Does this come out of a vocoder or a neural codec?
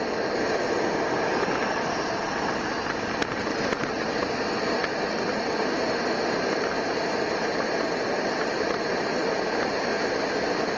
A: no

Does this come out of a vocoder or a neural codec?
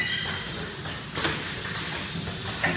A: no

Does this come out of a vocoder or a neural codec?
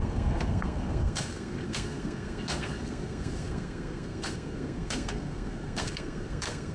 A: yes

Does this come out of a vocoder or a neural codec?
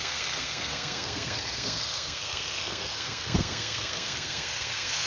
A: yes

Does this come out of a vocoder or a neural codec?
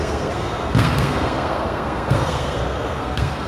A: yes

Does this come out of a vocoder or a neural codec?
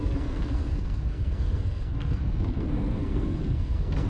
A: yes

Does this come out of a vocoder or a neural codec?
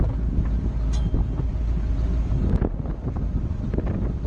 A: no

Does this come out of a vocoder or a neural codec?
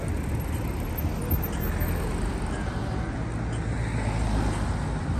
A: no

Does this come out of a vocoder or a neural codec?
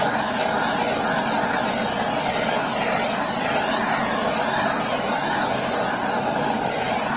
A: no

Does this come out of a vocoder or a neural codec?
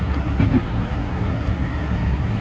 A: yes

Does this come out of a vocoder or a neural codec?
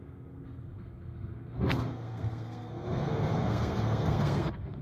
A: yes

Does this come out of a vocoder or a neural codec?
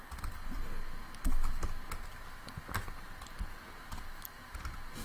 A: no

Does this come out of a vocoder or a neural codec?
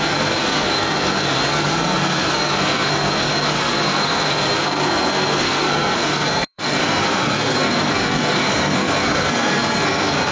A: yes